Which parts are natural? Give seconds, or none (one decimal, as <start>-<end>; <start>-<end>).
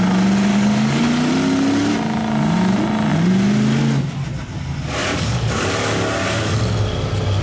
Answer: 0.0-0.5; 1.3-5.0; 6.5-7.4